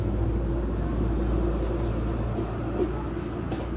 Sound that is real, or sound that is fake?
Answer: real